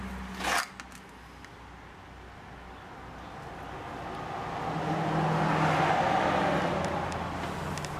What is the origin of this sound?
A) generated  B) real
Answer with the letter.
B